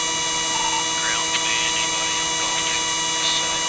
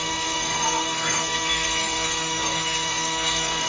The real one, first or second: first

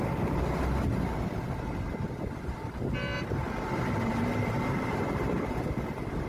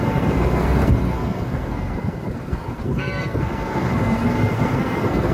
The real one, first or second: first